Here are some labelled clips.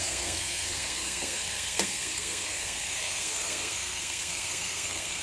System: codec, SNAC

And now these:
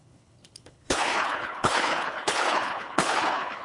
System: codec, HILCodec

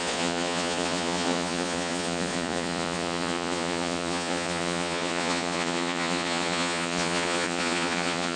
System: vocoder, Vocos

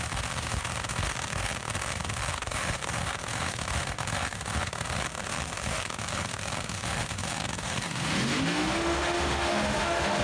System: autoencoder, DAC-VAE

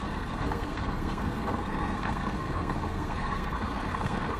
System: codec, SNAC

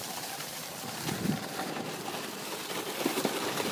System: none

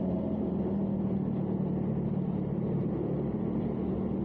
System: none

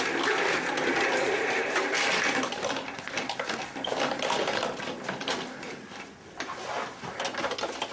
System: none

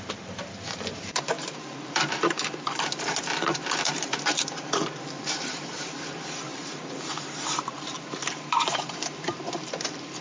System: vocoder, BigVGAN v2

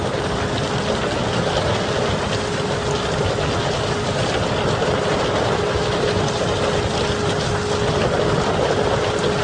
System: none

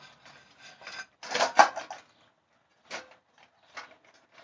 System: none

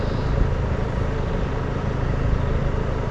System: none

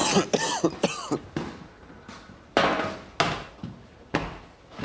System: none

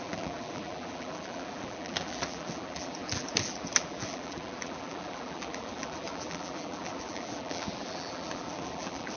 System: vocoder, BigVGAN v2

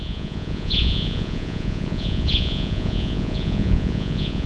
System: vocoder, Vocos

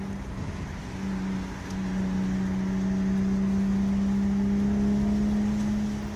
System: none